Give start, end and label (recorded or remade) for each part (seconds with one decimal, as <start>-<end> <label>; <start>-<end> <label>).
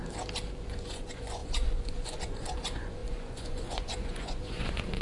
0.0-0.6 recorded; 0.6-5.0 remade